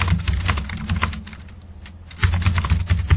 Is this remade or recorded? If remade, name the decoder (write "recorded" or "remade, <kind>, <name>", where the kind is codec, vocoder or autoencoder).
recorded